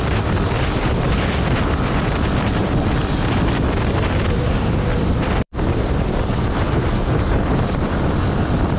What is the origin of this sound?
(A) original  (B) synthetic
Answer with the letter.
B